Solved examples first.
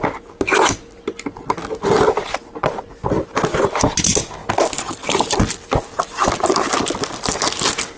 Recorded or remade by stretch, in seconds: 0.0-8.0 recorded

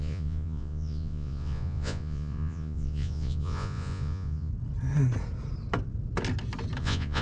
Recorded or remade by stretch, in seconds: 0.0-4.5 remade; 4.5-6.8 recorded; 6.8-7.2 remade

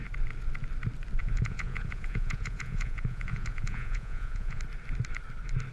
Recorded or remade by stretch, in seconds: 0.0-1.2 recorded; 1.2-4.6 remade; 4.6-5.7 recorded

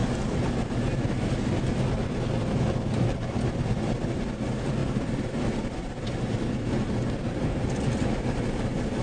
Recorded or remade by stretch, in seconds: 0.0-9.0 recorded